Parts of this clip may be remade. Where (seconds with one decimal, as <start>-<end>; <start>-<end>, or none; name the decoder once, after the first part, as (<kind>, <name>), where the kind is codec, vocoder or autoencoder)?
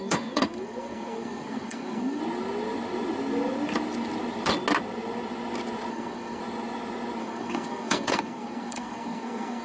0.0-2.2 (codec, SNAC); 5.9-6.4; 7.2-9.6